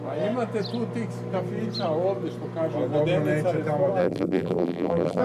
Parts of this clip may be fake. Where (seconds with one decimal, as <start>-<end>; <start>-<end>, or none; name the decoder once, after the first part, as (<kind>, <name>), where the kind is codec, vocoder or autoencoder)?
4.0-5.2 (vocoder, BigVGAN v2)